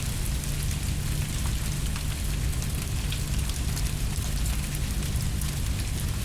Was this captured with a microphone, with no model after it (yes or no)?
yes